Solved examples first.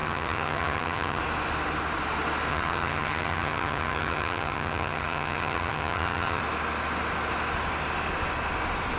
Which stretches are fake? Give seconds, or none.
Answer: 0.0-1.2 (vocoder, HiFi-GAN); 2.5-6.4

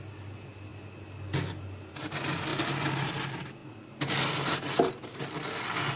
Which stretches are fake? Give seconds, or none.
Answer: none

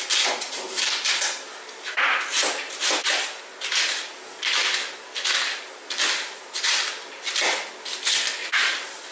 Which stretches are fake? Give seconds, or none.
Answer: none

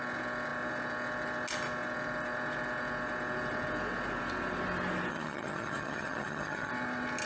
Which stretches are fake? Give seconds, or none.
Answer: 5.1-6.7 (vocoder, HiFi-GAN)

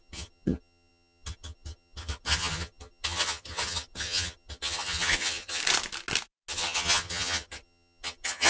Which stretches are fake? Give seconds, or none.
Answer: 0.0-5.6 (vocoder, HiFi-GAN); 6.5-8.5

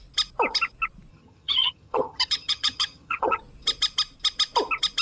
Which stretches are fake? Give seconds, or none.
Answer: 1.1-3.4 (vocoder, HiFi-GAN)

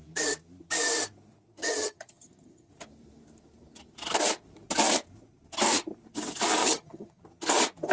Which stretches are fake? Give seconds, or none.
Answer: 1.6-2.7 (vocoder, HiFi-GAN); 6.6-7.2

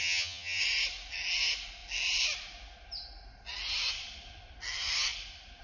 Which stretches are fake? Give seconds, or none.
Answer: 0.0-0.6 (vocoder, HiFi-GAN)